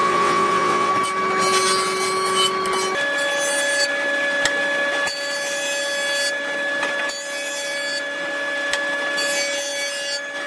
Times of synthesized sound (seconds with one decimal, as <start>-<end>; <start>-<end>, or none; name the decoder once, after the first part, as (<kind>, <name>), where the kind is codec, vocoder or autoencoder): 0.0-0.9 (vocoder, WaveNeXt)